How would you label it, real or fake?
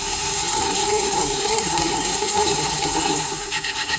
fake